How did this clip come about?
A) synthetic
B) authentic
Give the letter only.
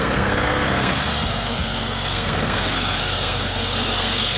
A